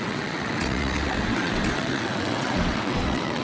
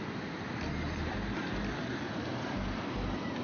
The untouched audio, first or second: second